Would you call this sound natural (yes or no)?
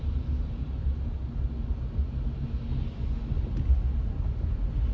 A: yes